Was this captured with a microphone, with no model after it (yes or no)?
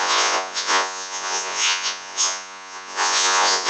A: no